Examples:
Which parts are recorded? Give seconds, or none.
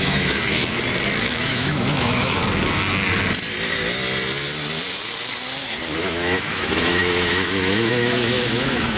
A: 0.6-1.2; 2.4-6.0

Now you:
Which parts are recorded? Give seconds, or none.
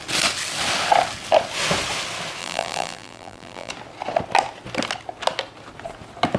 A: 0.0-2.4; 3.7-6.4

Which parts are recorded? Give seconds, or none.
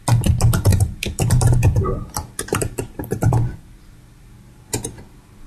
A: 0.0-0.7; 3.3-5.5